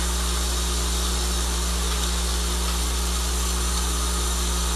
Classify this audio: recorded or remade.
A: recorded